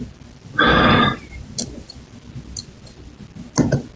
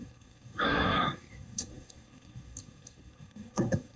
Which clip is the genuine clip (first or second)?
first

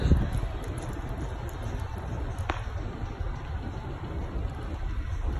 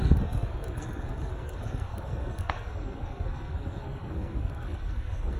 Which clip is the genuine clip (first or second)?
first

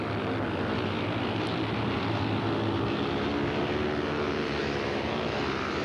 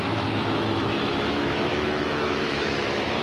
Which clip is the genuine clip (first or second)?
first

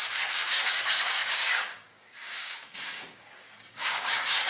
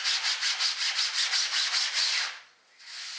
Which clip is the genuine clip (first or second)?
second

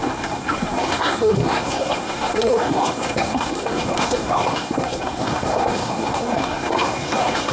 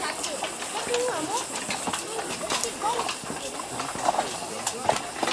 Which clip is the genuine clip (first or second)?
second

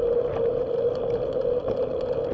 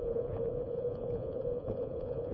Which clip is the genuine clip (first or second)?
first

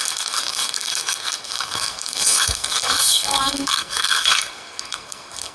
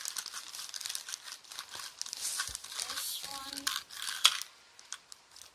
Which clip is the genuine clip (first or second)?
second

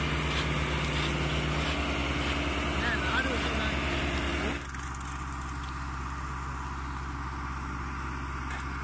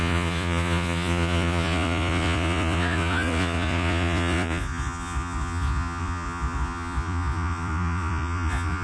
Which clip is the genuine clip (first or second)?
first